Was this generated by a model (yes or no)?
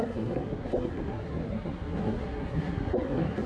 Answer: yes